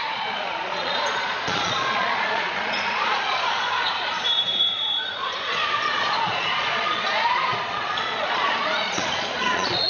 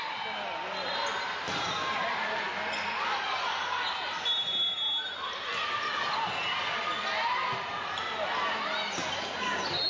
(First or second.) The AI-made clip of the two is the first